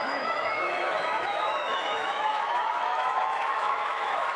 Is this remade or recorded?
remade